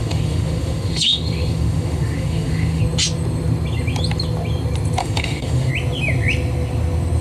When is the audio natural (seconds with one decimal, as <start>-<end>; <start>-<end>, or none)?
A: 2.8-5.0; 5.7-7.2